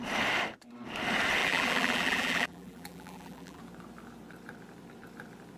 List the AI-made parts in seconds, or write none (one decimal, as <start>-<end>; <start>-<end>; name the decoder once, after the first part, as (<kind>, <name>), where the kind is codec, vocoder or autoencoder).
1.4-3.6 (vocoder, BigVGAN v2)